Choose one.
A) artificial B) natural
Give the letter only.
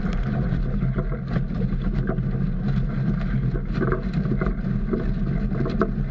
B